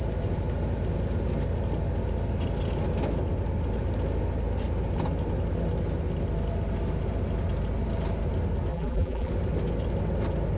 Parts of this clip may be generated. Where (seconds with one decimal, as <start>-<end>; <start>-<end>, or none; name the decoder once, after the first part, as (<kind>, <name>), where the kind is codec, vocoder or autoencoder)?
8.7-9.3 (vocoder, BigVGAN v2)